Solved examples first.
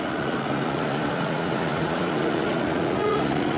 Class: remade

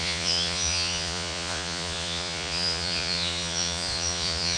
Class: remade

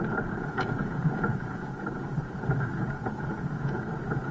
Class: remade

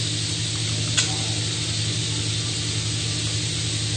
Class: recorded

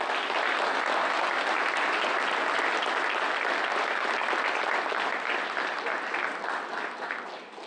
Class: recorded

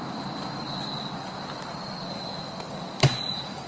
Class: recorded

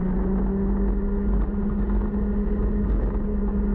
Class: recorded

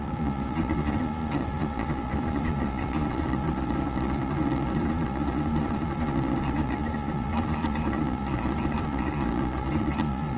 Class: remade